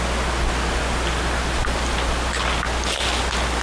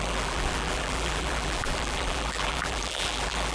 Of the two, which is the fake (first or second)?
second